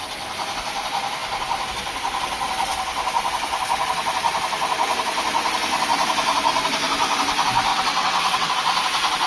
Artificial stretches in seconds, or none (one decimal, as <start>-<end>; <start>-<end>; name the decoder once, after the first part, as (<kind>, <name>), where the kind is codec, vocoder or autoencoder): 7.7-8.5 (vocoder, WaveNeXt)